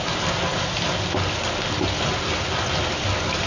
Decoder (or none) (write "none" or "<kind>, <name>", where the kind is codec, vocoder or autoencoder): none